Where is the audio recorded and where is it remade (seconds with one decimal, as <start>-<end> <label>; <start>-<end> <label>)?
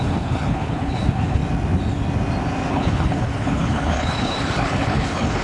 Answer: 0.0-1.4 remade; 1.4-2.7 recorded; 2.7-5.4 remade